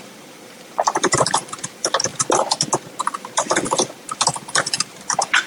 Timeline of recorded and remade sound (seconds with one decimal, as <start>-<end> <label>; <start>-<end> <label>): 0.0-2.1 remade; 2.1-3.0 recorded; 3.0-5.5 remade